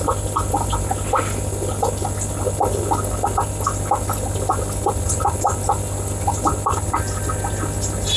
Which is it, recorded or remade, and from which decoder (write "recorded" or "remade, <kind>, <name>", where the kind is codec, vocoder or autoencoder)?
recorded